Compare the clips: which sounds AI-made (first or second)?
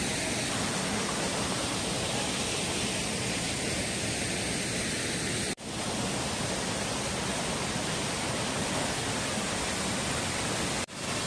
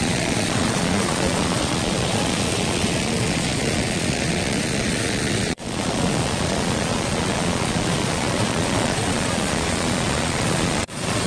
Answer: second